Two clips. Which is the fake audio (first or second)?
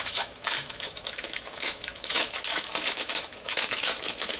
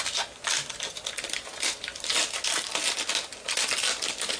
first